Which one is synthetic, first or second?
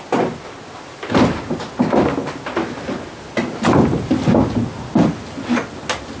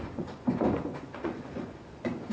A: second